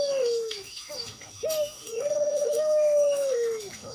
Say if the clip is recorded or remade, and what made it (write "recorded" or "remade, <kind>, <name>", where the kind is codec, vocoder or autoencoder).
remade, autoencoder, DAC-VAE